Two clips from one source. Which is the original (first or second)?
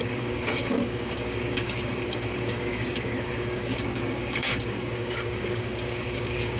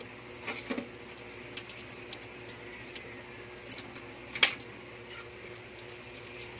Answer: second